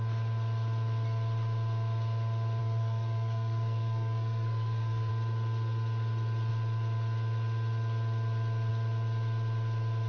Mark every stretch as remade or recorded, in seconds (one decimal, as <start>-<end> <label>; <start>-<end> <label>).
0.0-2.6 recorded; 2.6-5.1 remade; 5.1-10.1 recorded

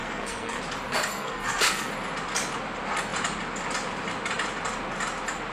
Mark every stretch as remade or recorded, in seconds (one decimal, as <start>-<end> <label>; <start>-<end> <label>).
0.0-0.6 remade; 0.6-1.1 recorded; 1.1-1.9 remade; 1.9-5.5 recorded